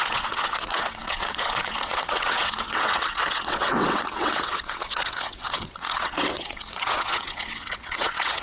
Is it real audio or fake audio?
fake